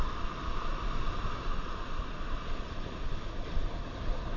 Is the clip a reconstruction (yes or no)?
no